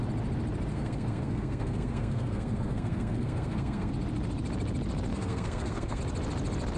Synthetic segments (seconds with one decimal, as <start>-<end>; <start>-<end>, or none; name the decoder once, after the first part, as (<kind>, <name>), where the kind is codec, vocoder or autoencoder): 0.7-3.9 (codec, SNAC); 5.1-6.0